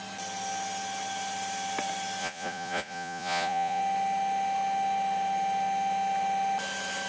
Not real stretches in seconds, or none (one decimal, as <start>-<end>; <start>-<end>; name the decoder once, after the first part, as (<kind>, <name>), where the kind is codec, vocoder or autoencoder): 2.2-3.8 (vocoder, Vocos)